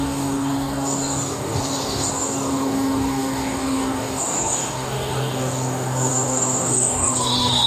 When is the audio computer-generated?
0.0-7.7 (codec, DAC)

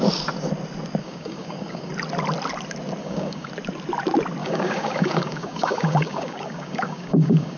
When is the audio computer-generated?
1.0-1.9 (codec, DAC); 3.0-3.5; 4.4-7.6

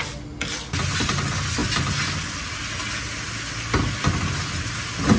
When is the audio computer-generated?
none

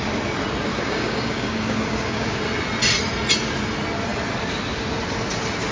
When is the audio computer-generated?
0.7-2.4 (codec, DAC)

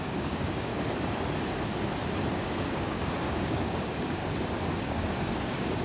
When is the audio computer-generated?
0.0-0.7 (codec, DAC); 2.3-4.2; 4.8-5.8

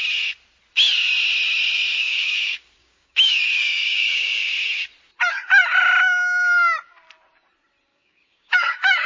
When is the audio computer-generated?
1.9-4.5 (codec, DAC); 7.9-9.1

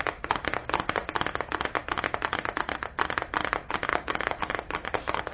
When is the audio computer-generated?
3.9-4.4 (codec, DAC)

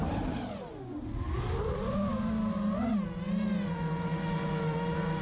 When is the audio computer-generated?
none